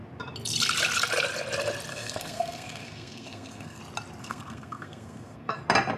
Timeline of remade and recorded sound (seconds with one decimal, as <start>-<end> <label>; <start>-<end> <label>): 0.0-1.9 recorded; 1.9-3.8 remade; 3.8-4.2 recorded; 4.2-5.6 remade; 5.6-6.0 recorded